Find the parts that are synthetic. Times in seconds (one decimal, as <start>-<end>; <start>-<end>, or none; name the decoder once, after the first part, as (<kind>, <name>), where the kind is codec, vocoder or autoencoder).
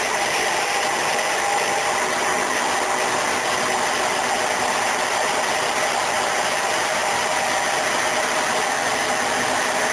none